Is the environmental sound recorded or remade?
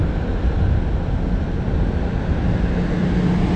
recorded